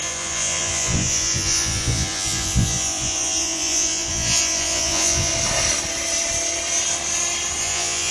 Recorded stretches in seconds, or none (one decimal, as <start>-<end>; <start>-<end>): 5.3-7.6